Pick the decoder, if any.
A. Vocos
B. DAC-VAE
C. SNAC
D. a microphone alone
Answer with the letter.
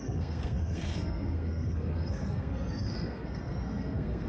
C